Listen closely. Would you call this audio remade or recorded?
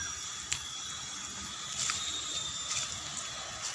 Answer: recorded